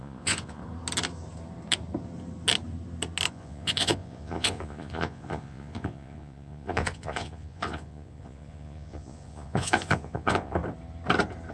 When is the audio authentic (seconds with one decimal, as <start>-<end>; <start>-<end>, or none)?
0.6-3.3; 10.6-11.5